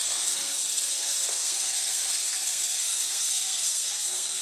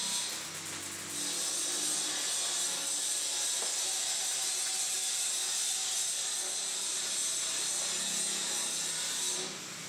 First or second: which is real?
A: second